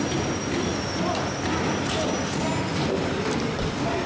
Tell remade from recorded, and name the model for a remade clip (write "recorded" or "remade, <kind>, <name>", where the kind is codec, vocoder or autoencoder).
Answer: recorded